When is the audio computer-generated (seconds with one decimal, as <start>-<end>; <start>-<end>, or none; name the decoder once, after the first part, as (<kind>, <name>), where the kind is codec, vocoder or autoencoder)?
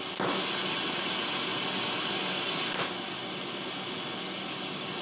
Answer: none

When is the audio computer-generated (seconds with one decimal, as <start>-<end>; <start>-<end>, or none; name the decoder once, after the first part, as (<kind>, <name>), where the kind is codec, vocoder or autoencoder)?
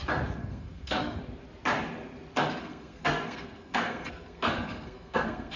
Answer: 0.4-1.2 (codec, SNAC); 2.6-5.6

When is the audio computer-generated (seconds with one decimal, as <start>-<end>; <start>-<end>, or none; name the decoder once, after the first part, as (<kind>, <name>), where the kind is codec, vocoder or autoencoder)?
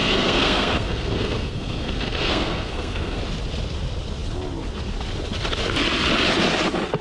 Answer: 0.0-3.2 (codec, SNAC)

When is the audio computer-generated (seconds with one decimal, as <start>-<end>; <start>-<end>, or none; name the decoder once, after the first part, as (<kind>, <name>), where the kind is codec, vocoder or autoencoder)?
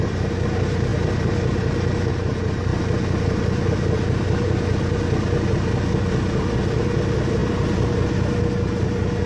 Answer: none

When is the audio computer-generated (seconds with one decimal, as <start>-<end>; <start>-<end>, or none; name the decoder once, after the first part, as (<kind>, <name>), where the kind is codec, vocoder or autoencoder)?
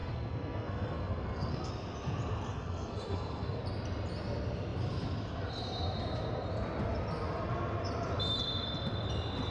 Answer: 0.0-1.7 (codec, SNAC); 2.5-3.6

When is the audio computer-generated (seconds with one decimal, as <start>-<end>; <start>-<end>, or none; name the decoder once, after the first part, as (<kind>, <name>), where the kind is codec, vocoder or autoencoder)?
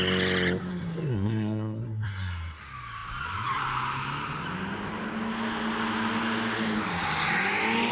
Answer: 0.7-2.6 (codec, SNAC)